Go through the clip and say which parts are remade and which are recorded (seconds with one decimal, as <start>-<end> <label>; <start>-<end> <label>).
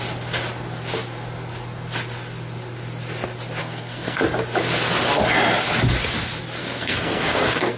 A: 0.0-3.6 recorded; 3.6-4.2 remade; 4.2-6.6 recorded; 6.6-7.8 remade